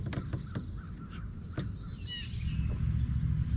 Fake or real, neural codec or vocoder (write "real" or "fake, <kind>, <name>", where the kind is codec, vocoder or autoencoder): real